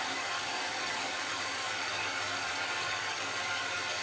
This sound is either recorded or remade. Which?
remade